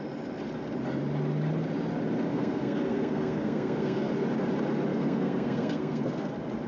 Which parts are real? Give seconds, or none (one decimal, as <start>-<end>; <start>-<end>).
0.0-2.3; 4.1-4.9; 6.3-6.7